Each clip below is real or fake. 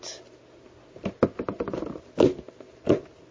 real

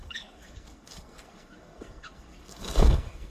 fake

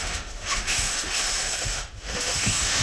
fake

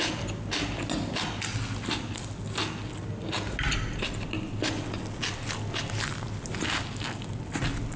real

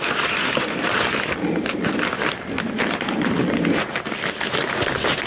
real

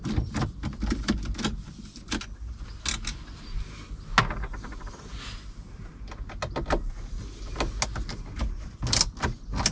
real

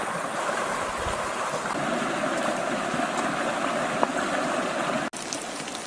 real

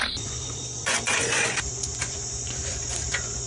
fake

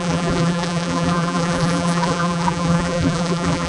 fake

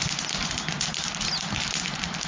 real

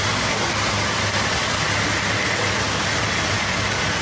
real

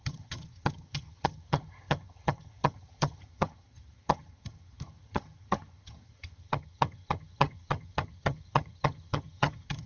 fake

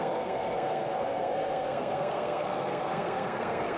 fake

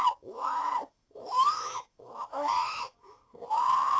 fake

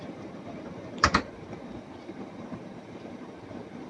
fake